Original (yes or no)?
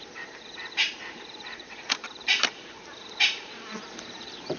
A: no